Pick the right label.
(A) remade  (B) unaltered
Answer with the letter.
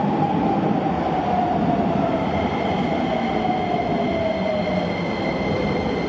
B